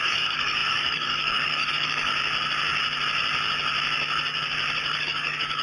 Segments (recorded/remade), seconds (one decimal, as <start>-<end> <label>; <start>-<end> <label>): 0.0-2.1 remade; 2.1-5.0 recorded; 5.0-5.6 remade

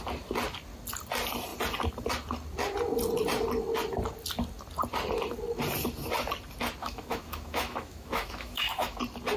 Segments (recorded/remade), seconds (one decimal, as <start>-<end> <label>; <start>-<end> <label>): 0.0-6.8 recorded; 6.8-9.0 remade; 9.0-9.4 recorded

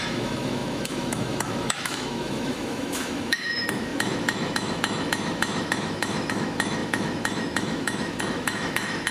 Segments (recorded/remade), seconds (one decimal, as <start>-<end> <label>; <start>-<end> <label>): 0.0-9.1 remade